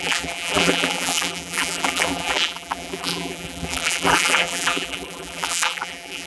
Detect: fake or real fake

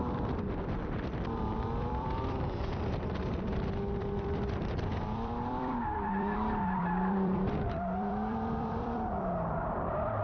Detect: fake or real fake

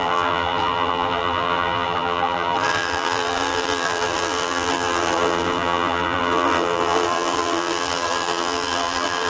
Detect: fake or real fake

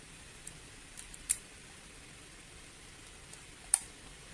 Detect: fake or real fake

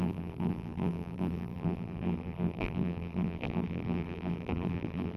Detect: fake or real fake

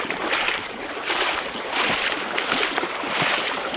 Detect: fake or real fake